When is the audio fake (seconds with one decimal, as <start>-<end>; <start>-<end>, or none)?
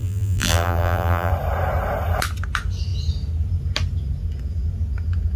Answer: 0.0-1.3